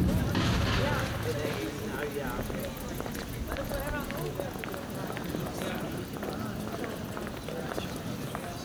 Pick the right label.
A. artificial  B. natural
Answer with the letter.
B